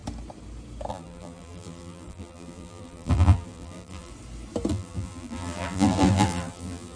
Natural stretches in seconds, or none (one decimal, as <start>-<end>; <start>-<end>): 0.0-0.9; 4.1-4.7